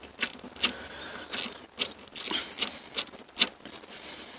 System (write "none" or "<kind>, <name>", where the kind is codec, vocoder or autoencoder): none